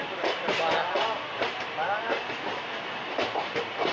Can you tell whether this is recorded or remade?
recorded